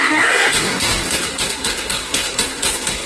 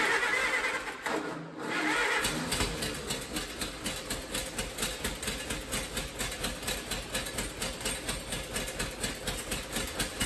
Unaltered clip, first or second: second